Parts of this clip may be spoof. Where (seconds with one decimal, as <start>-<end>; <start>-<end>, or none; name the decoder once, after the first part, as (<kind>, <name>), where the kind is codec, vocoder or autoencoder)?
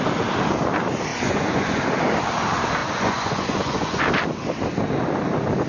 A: 1.1-1.8 (vocoder, Vocos); 2.8-4.0